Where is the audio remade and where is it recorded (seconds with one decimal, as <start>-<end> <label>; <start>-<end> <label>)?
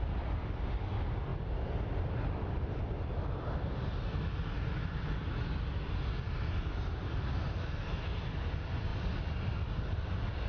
0.0-10.5 recorded